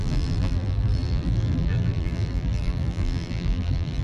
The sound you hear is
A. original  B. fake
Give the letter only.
B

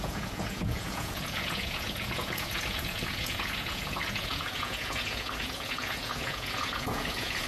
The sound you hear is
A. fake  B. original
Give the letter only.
A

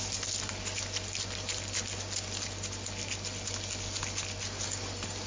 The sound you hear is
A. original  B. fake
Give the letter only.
A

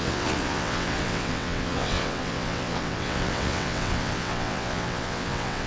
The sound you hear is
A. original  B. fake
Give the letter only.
B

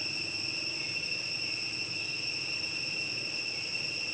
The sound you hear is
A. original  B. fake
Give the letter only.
A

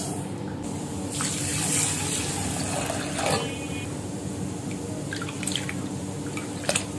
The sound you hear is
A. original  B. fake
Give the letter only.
A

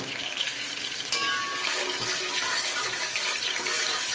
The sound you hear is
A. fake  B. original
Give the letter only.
A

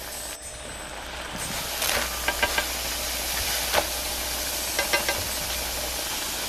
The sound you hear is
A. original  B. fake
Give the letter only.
A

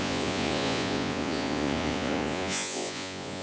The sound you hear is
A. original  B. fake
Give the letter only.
B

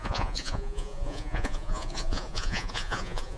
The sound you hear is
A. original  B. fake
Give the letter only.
B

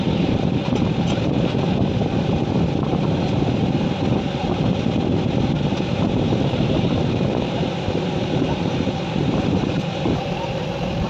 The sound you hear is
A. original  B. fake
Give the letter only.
B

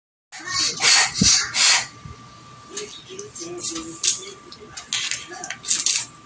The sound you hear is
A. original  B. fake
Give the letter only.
A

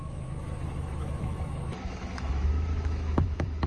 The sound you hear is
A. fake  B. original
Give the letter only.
A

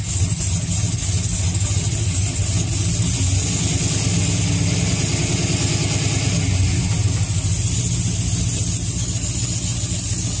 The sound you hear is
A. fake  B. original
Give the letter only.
B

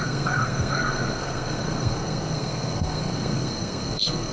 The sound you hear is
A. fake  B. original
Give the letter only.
A